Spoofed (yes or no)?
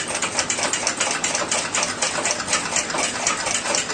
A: no